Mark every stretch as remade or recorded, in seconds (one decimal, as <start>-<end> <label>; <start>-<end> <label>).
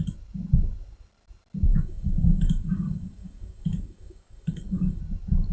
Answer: 0.0-1.7 recorded; 1.7-5.0 remade; 5.0-5.5 recorded